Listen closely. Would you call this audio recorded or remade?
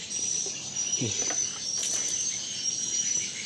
recorded